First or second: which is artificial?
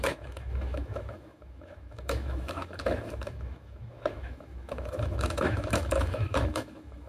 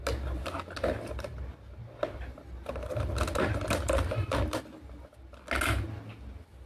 first